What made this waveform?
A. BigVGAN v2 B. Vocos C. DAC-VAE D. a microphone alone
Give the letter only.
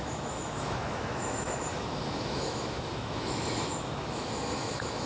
C